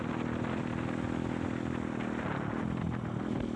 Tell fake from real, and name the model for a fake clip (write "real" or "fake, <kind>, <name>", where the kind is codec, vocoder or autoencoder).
real